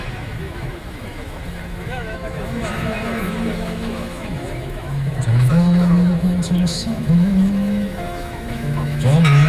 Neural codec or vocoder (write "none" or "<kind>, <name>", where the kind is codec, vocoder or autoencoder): autoencoder, DAC-VAE